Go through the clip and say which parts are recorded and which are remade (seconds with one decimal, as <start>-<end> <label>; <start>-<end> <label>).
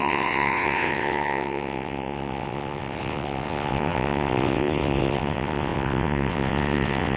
0.0-7.2 remade